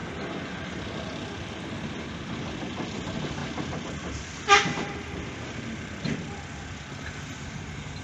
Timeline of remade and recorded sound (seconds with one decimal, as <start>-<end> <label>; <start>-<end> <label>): 0.0-8.0 recorded